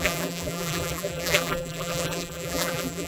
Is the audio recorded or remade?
remade